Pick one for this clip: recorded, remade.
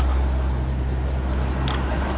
recorded